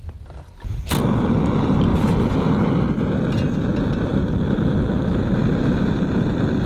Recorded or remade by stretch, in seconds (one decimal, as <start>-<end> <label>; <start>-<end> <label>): 0.0-1.9 recorded; 1.9-2.5 remade; 2.5-4.1 recorded; 4.1-6.7 remade